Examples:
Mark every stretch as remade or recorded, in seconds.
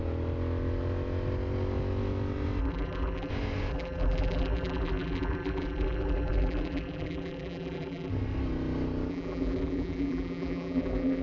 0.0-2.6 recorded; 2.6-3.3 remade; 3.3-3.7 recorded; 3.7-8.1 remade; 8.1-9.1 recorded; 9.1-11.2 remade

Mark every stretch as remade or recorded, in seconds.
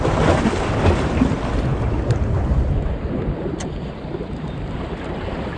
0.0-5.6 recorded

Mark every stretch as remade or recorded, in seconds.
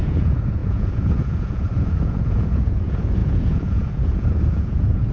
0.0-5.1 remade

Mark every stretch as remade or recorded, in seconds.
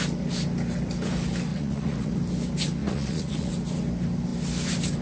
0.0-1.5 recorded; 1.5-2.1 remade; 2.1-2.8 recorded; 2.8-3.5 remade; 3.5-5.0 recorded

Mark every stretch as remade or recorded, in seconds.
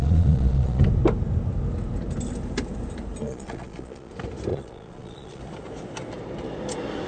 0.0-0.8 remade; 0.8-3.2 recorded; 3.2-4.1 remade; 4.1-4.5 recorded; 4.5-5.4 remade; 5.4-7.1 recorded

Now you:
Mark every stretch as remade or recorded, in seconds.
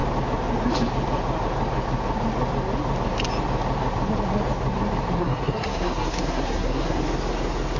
0.0-5.2 recorded; 5.2-7.0 remade; 7.0-7.8 recorded